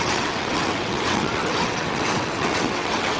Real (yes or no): no